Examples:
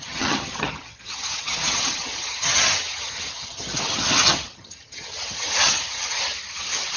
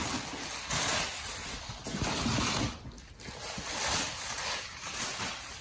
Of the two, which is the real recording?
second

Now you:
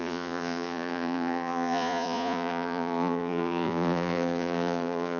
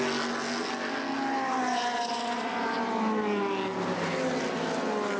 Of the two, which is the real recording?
second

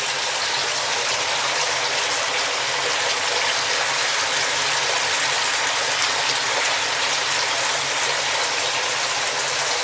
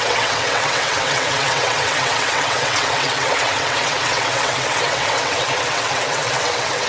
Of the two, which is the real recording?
first